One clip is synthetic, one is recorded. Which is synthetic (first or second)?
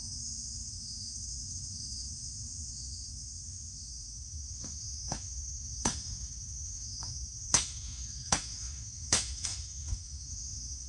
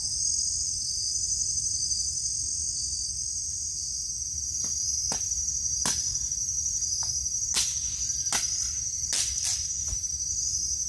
first